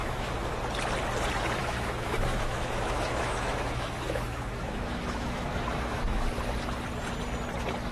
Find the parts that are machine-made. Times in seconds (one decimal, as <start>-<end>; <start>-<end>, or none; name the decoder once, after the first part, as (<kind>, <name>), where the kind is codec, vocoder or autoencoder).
0.0-0.6 (autoencoder, DAC-VAE); 1.6-6.3